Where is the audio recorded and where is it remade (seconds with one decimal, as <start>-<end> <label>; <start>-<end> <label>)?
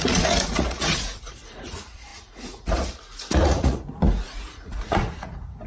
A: 0.0-5.7 remade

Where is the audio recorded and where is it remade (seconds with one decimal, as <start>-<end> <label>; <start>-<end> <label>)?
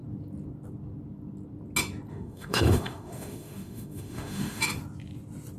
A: 0.0-2.1 recorded; 2.1-4.6 remade; 4.6-5.6 recorded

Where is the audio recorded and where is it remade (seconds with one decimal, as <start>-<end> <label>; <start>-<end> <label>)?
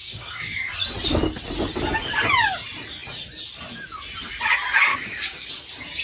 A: 0.0-0.7 remade; 0.7-4.9 recorded; 4.9-5.5 remade; 5.5-6.0 recorded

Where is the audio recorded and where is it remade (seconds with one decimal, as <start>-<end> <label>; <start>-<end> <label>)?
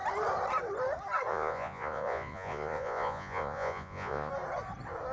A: 0.0-1.3 recorded; 1.3-4.3 remade; 4.3-5.1 recorded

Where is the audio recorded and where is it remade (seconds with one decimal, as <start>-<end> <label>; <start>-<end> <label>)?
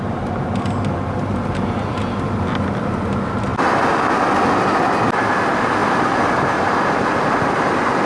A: 0.0-8.1 recorded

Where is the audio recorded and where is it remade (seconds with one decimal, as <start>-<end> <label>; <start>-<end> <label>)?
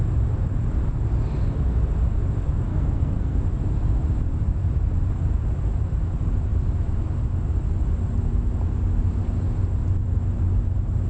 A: 0.0-2.7 recorded; 2.7-3.4 remade; 3.4-11.1 recorded